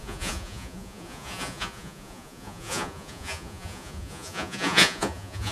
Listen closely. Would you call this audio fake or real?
fake